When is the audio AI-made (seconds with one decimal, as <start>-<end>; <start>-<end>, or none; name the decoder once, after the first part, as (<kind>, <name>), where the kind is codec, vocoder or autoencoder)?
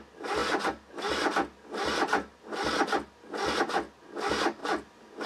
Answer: none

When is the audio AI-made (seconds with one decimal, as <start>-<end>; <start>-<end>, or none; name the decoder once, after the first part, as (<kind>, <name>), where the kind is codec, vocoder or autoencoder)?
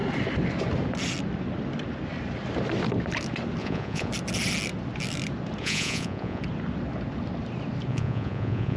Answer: 3.6-4.1 (vocoder, Vocos); 5.6-6.4; 7.9-8.8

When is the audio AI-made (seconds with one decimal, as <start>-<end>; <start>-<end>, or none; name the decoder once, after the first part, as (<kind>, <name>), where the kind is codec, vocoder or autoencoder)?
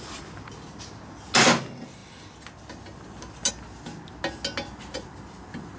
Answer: none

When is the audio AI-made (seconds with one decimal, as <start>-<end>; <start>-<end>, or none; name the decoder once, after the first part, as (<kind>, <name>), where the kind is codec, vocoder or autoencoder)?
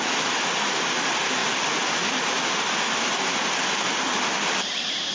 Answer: none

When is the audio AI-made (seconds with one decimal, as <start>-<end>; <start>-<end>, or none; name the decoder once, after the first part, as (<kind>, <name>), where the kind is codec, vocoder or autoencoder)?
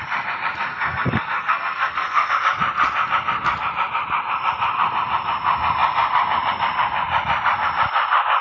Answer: 0.7-2.3 (codec, SNAC)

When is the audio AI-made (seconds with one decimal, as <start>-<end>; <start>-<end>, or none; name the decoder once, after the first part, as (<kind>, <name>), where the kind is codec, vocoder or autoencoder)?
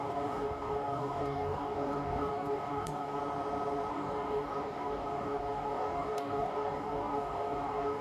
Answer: 0.0-3.2 (codec, DAC); 3.9-8.0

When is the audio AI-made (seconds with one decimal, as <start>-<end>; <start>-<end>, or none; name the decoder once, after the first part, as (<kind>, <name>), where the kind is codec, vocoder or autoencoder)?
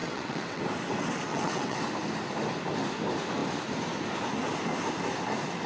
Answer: 0.0-0.6 (vocoder, WaveNeXt); 1.3-1.8